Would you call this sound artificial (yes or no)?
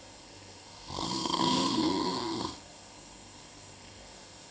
yes